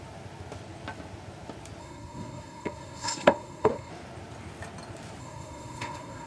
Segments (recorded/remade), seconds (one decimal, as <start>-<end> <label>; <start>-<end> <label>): 0.0-1.8 recorded; 1.8-3.9 remade; 3.9-5.2 recorded; 5.2-6.3 remade